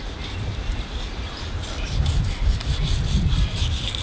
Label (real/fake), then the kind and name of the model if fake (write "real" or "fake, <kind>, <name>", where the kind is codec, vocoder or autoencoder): fake, vocoder, BigVGAN v2